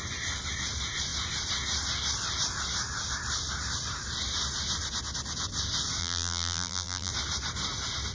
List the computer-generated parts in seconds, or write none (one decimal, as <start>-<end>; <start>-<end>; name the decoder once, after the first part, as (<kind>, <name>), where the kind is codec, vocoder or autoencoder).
6.0-7.1 (vocoder, BigVGAN v2)